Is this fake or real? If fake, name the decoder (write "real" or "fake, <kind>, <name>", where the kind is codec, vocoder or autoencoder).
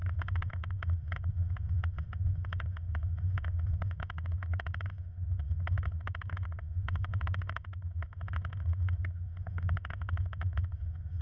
fake, autoencoder, DAC-VAE